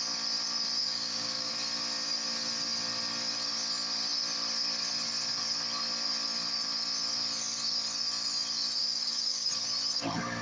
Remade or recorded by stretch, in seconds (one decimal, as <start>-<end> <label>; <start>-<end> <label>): 0.0-0.8 recorded; 0.8-1.5 remade; 1.5-8.8 recorded; 8.8-9.5 remade; 9.5-10.4 recorded